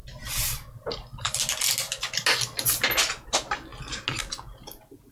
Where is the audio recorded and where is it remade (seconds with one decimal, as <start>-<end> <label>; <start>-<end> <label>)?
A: 0.0-5.1 recorded